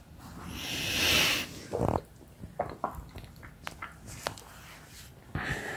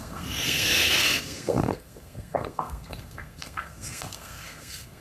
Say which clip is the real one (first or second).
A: first